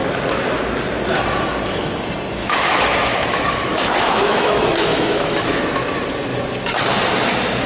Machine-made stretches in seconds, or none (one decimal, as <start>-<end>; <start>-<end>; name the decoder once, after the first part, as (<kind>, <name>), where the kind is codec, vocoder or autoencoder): 2.4-5.6 (autoencoder, DAC-VAE)